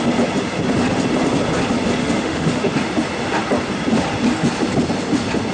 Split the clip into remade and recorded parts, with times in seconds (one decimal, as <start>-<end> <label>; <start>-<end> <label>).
0.0-2.0 recorded; 2.0-2.7 remade; 2.7-5.5 recorded